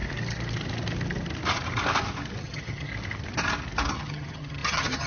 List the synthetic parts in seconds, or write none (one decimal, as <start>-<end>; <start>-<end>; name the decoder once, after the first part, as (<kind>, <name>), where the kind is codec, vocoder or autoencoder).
2.4-2.9 (vocoder, HiFi-GAN); 3.9-5.1